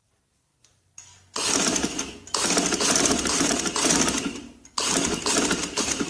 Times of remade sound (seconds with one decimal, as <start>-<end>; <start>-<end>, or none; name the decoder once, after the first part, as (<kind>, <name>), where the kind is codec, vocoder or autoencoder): none